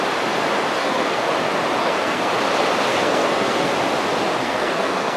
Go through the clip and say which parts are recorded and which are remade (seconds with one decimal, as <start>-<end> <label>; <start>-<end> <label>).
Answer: 0.0-0.8 recorded; 0.8-1.3 remade; 1.3-1.8 recorded; 1.8-2.3 remade; 2.3-2.9 recorded; 2.9-3.7 remade; 3.7-4.4 recorded; 4.4-5.2 remade